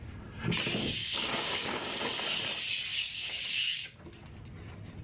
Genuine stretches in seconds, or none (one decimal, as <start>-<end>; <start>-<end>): 0.0-1.0; 2.0-2.9; 4.0-5.0